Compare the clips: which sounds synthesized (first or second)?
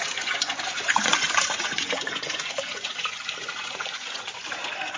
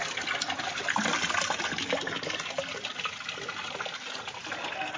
first